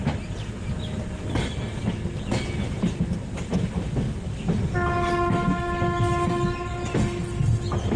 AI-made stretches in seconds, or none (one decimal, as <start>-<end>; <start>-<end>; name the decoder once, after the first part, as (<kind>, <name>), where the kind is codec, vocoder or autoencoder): none